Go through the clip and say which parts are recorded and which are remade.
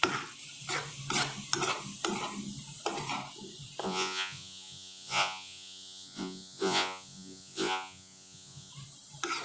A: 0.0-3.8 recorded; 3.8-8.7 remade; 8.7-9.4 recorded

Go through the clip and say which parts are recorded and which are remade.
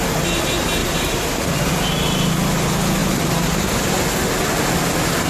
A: 0.0-0.8 recorded; 0.8-1.5 remade; 1.5-3.0 recorded; 3.0-3.9 remade; 3.9-5.3 recorded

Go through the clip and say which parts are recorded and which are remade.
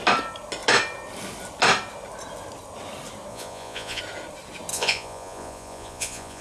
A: 0.0-3.3 recorded; 3.3-4.0 remade; 4.0-4.7 recorded; 4.7-6.4 remade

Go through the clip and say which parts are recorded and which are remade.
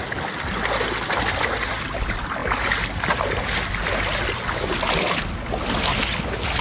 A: 0.0-6.6 recorded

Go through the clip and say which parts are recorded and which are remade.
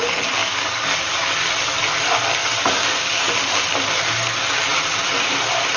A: 0.0-0.4 recorded; 0.4-1.5 remade; 1.5-2.4 recorded; 2.4-3.3 remade; 3.3-5.8 recorded